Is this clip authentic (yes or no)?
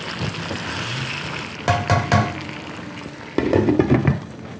yes